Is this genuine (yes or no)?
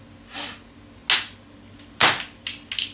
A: yes